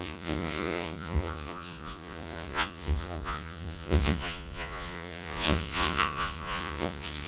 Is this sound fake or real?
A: fake